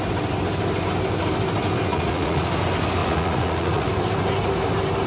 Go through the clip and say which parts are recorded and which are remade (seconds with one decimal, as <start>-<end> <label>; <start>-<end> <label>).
0.0-1.9 recorded; 1.9-2.5 remade; 2.5-3.0 recorded; 3.0-3.9 remade; 3.9-5.1 recorded